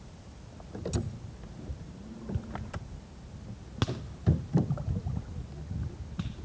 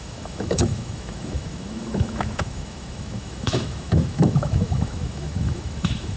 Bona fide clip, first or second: first